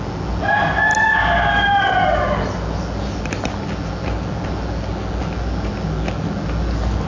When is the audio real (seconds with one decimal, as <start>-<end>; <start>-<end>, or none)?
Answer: 0.0-7.1

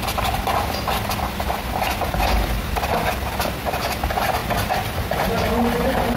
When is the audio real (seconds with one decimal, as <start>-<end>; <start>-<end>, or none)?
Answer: 0.0-6.2

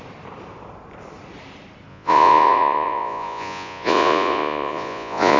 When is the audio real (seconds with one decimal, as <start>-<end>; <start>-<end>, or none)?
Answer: 0.0-1.9

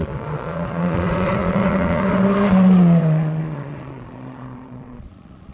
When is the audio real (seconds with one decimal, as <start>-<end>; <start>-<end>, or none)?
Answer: none

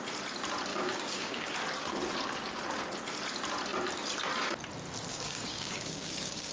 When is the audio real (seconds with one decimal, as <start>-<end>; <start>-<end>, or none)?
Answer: 0.0-0.7; 1.5-5.1

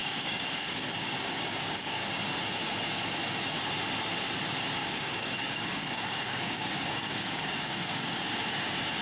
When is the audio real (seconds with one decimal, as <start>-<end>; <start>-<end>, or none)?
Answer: 2.1-4.8; 8.3-9.0

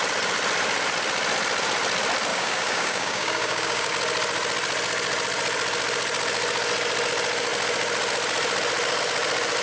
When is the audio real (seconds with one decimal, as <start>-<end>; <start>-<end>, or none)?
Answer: 0.0-2.3; 3.9-9.6